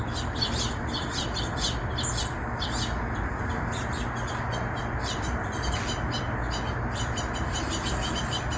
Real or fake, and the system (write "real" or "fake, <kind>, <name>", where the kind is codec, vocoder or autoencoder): real